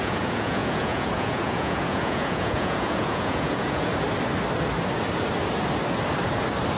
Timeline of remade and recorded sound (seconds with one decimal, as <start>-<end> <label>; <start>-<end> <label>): 0.0-3.9 remade; 3.9-6.8 recorded